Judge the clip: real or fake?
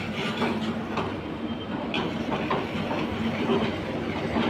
real